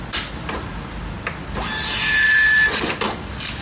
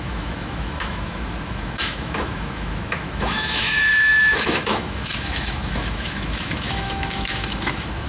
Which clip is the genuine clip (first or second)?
first